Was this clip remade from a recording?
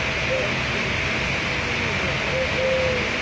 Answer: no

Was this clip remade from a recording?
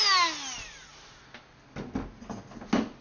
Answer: no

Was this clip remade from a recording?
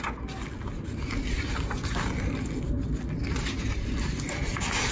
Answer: no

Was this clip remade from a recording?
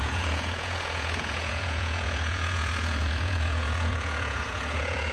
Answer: yes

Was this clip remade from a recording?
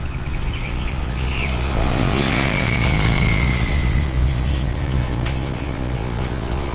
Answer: yes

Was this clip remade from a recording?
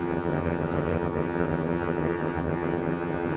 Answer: yes